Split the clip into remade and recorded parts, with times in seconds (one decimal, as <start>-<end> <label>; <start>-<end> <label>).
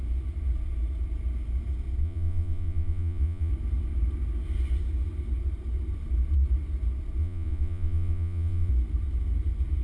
0.0-2.0 recorded; 2.0-3.5 remade; 3.5-7.2 recorded; 7.2-8.7 remade; 8.7-9.8 recorded